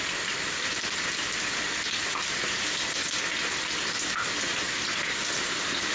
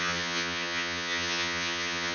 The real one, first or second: first